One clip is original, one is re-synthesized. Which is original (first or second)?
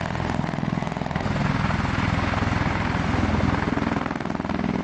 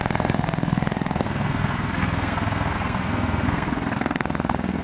first